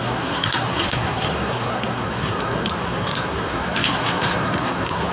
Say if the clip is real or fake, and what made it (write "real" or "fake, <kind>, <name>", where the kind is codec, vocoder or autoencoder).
fake, codec, SNAC